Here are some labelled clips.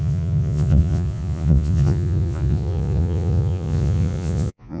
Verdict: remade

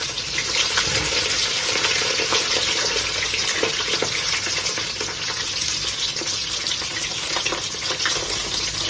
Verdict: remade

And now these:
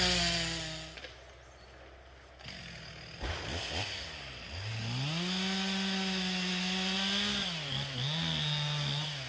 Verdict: recorded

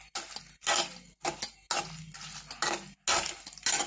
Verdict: recorded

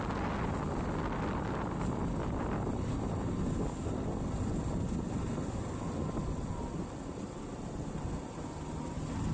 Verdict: recorded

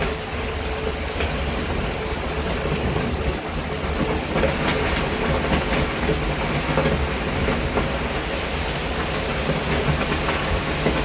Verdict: recorded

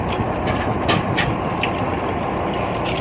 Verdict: remade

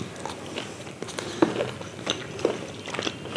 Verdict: recorded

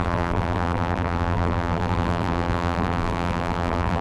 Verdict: remade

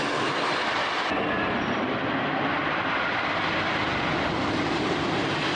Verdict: recorded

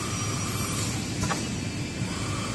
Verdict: recorded